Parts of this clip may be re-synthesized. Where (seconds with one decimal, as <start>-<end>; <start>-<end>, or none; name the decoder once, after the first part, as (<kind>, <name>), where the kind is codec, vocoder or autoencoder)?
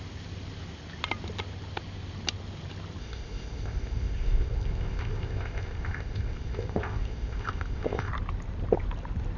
3.0-8.1 (codec, ZipCodec)